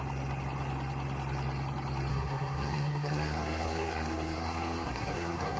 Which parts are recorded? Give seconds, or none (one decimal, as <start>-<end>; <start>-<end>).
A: 0.0-2.1